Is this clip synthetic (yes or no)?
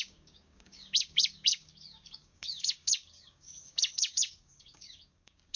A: yes